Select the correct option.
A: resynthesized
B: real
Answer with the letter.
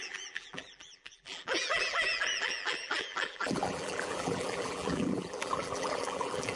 A